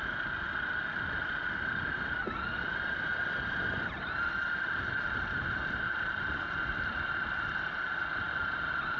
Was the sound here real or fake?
real